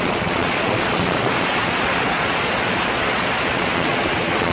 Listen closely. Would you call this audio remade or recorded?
remade